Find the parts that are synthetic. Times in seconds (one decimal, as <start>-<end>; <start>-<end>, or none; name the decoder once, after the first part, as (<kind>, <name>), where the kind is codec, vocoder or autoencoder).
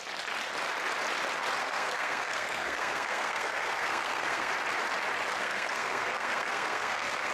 1.6-4.5 (codec, SNAC); 5.4-7.3